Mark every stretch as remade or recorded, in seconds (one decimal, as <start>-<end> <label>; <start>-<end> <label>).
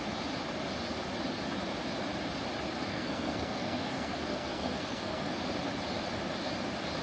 0.0-2.9 recorded; 2.9-5.4 remade; 5.4-7.0 recorded